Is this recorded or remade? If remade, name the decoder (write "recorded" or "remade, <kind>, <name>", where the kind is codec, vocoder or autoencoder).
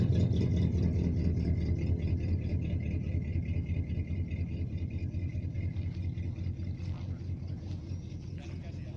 recorded